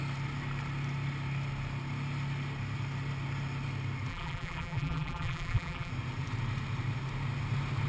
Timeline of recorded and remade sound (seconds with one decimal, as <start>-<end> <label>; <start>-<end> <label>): 0.0-4.1 recorded; 4.1-5.9 remade; 5.9-7.9 recorded